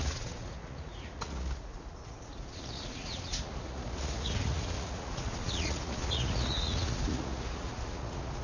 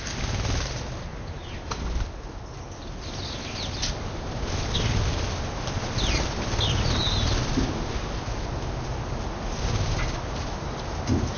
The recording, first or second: second